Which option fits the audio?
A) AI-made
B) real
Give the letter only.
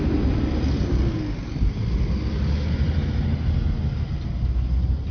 B